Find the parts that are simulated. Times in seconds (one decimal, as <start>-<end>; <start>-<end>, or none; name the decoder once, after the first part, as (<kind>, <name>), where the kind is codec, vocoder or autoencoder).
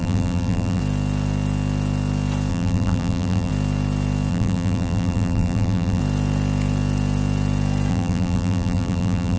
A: 0.0-0.8 (vocoder, BigVGAN v2); 2.5-3.5; 4.3-6.0; 7.9-9.4